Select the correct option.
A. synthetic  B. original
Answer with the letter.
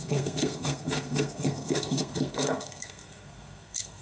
A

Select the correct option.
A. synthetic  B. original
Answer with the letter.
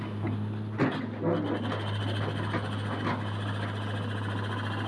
B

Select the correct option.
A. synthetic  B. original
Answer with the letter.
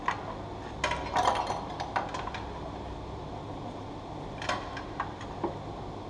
B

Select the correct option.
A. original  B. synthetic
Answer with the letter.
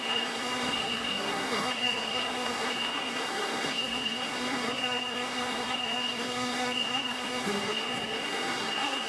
B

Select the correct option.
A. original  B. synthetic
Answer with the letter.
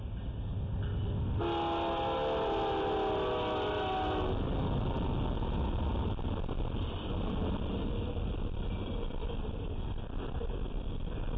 A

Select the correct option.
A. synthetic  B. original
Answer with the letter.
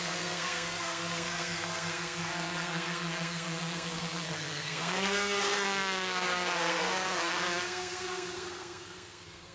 A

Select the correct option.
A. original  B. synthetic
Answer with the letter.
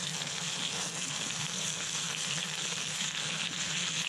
B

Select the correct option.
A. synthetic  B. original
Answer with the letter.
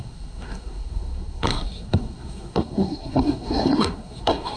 A